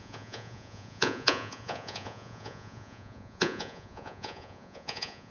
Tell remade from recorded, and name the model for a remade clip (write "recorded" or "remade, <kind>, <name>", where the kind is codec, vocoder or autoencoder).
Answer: remade, vocoder, Vocos